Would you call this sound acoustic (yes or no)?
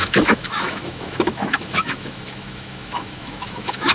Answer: no